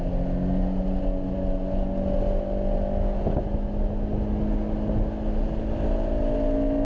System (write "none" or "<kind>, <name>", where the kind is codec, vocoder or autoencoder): none